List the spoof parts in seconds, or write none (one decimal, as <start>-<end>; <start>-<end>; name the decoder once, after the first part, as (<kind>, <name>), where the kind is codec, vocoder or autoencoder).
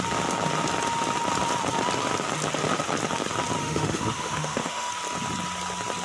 3.6-4.9 (autoencoder, DAC-VAE)